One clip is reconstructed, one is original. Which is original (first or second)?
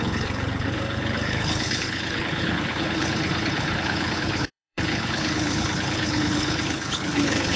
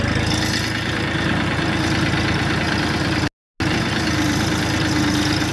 second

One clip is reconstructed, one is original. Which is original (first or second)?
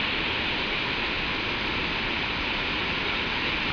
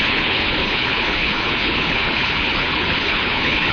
first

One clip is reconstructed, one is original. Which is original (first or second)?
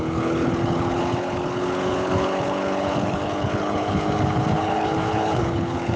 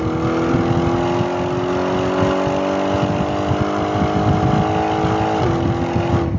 second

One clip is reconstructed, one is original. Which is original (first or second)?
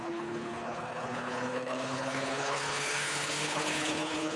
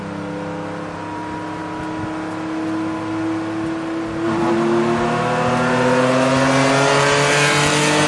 second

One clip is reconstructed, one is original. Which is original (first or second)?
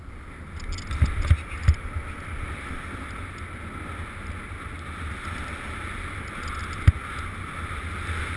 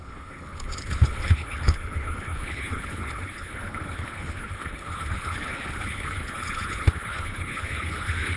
first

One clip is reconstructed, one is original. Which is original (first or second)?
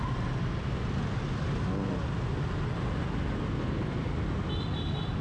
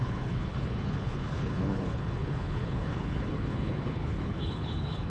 first